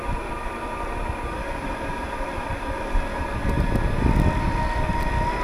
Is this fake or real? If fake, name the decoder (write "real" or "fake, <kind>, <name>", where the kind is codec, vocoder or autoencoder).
real